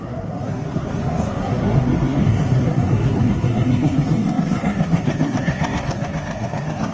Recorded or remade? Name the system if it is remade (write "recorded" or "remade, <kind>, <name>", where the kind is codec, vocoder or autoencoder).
remade, codec, SNAC